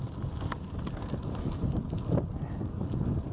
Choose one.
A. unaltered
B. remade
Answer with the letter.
A